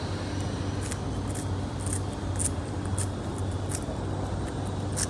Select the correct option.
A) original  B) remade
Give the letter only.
A